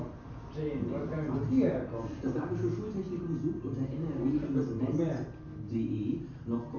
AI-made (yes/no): no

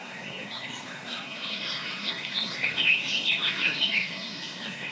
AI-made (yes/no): yes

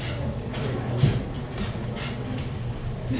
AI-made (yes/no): no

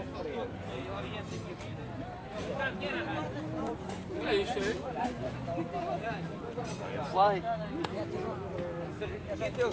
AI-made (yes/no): yes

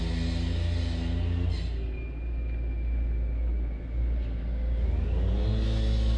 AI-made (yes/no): no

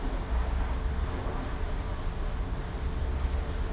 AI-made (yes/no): no